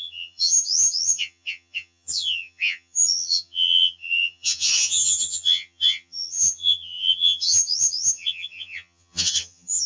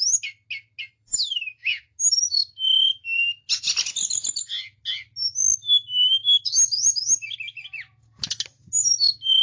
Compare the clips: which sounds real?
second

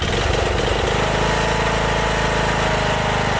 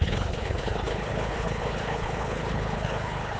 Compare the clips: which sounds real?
first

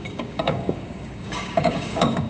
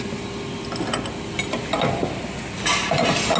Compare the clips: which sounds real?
second